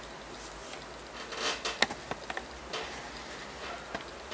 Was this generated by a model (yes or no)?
no